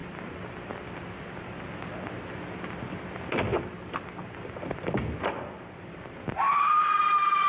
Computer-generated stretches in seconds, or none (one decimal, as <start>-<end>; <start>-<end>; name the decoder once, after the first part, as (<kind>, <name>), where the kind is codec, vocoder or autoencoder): 2.6-7.5 (vocoder, BigVGAN v2)